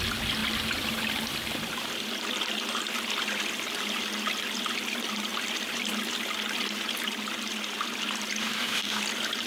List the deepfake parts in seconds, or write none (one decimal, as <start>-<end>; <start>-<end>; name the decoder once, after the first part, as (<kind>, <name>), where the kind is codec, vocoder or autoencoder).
8.4-9.0 (codec, DAC)

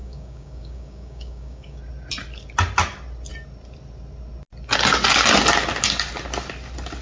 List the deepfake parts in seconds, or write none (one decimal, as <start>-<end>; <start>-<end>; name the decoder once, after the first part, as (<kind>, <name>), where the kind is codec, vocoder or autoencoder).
0.0-1.8 (codec, DAC)